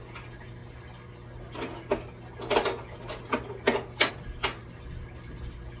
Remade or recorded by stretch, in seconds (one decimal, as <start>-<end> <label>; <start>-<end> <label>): 0.0-5.8 recorded